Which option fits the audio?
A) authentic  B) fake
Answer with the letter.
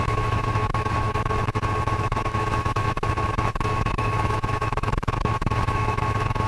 B